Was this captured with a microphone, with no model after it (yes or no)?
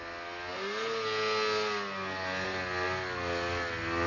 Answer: yes